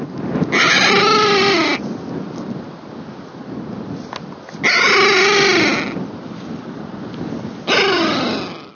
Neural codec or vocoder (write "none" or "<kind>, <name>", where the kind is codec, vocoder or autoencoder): none